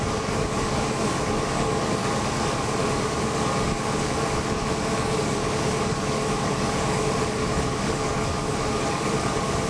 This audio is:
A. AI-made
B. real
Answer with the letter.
A